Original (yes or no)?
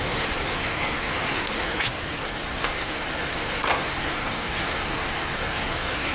no